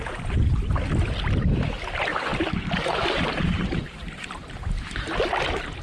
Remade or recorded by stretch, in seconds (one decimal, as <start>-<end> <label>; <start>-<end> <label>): 0.0-5.8 recorded